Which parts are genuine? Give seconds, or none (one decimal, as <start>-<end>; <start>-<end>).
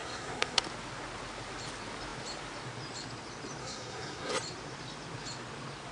0.6-3.6; 4.3-5.9